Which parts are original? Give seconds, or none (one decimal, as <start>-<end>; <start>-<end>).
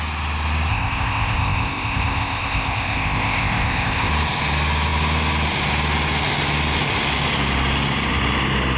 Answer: 0.0-0.7; 4.1-8.8